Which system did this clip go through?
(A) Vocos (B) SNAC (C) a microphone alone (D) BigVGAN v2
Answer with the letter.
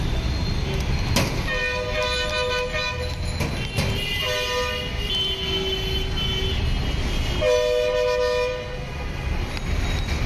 C